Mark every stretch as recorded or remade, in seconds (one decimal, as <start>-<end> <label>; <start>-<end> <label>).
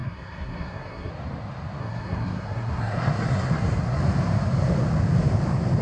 0.0-1.1 remade; 1.1-1.8 recorded; 1.8-4.0 remade; 4.0-5.8 recorded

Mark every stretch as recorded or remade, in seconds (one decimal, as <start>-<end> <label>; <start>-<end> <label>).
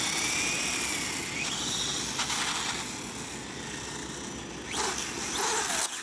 0.0-6.0 recorded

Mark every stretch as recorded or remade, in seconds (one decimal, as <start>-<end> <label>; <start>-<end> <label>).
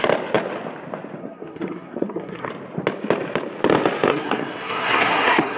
0.0-1.2 recorded; 1.2-2.5 remade; 2.5-4.1 recorded; 4.1-5.6 remade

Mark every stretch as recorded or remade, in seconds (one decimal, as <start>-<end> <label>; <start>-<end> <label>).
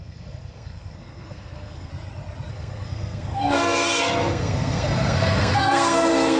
0.0-1.9 remade; 1.9-2.5 recorded; 2.5-6.4 remade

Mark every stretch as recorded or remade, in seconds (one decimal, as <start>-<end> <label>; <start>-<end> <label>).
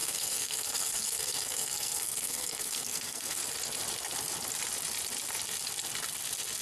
0.0-3.4 remade; 3.4-6.6 recorded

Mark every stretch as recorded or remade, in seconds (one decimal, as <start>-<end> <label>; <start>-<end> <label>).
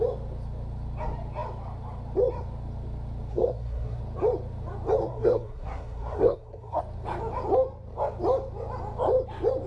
0.0-3.3 recorded; 3.3-4.0 remade; 4.0-5.0 recorded; 5.0-6.8 remade; 6.8-9.7 recorded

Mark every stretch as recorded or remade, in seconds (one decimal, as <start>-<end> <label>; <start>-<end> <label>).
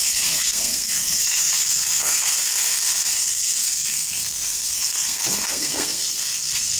0.0-6.8 remade